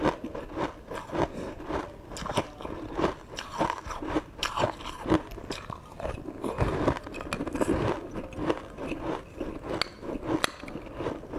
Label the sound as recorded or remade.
recorded